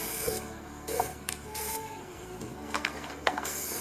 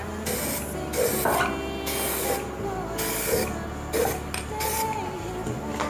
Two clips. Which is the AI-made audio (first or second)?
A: first